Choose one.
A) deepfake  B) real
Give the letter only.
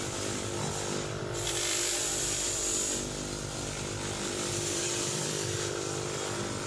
A